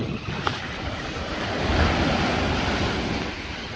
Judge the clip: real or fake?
real